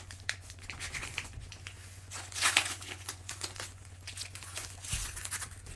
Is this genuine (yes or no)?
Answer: no